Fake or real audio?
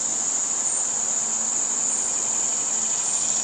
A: real